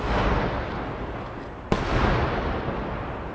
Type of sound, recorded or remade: recorded